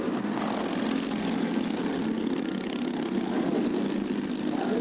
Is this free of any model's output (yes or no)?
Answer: yes